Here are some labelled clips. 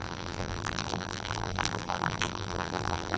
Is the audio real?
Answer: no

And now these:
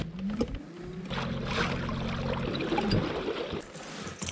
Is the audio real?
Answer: yes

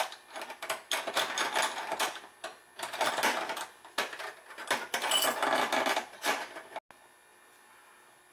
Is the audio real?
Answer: yes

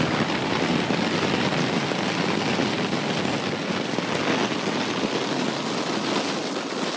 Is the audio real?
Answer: yes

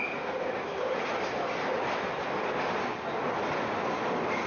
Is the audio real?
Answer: yes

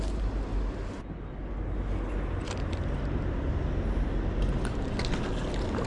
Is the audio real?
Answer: yes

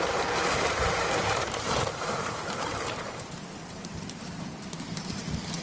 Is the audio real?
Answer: no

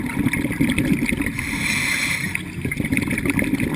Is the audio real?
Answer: yes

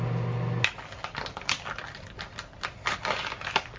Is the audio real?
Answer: yes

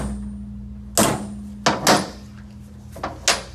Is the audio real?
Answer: yes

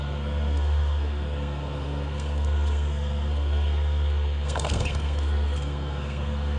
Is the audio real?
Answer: no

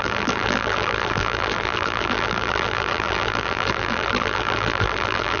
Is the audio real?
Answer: no